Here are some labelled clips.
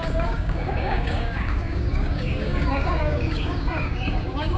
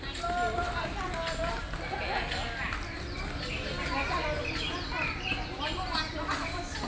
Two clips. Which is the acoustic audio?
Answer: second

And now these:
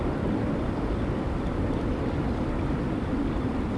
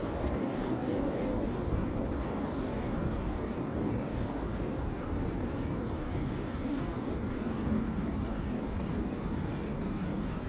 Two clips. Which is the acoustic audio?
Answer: first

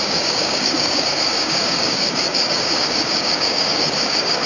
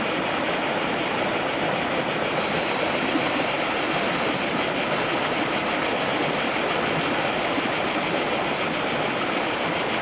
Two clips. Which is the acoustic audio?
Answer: second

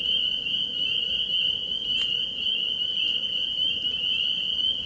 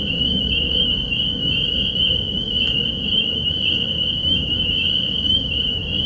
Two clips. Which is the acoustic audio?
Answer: first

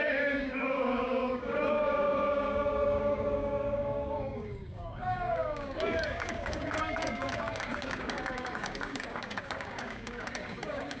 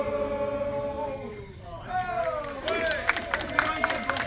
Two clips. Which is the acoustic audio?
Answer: second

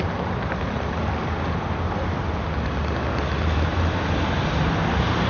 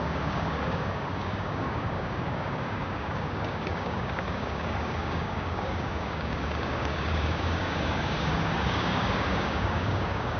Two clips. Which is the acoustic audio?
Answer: first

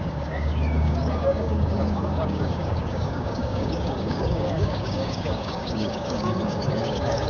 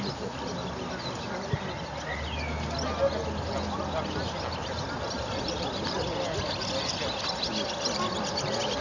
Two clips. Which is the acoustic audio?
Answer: second